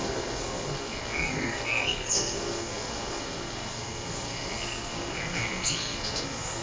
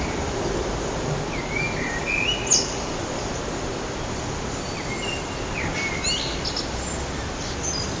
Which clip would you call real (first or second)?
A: second